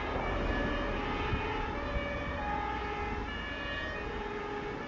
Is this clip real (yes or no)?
yes